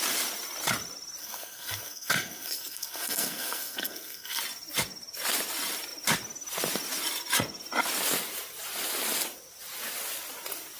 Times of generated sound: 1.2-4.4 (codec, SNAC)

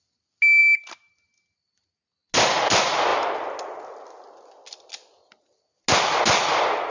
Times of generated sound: none

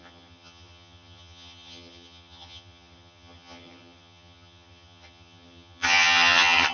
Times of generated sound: 0.0-6.7 (vocoder, HiFi-GAN)

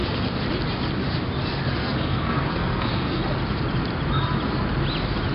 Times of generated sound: 1.8-3.2 (codec, SNAC)